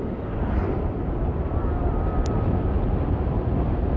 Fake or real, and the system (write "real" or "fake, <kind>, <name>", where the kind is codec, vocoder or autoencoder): real